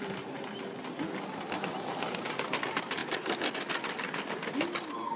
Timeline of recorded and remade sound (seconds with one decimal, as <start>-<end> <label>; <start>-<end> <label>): 0.0-5.2 recorded